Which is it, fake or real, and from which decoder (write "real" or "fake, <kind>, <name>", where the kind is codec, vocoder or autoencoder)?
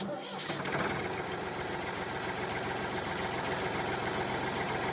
real